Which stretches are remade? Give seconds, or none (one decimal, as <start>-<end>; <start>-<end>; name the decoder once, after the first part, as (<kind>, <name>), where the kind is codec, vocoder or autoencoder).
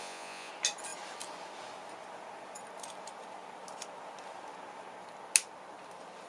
0.0-0.5 (vocoder, Vocos)